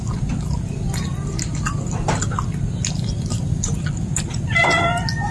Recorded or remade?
recorded